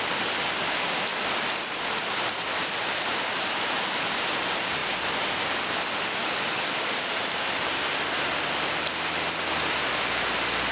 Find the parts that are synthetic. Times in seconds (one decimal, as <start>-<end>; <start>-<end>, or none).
4.8-5.7; 6.2-8.0